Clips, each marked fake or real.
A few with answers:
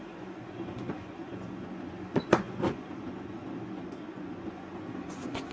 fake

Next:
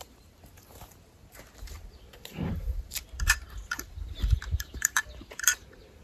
fake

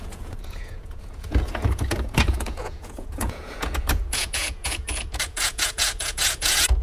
fake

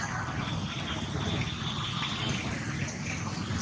real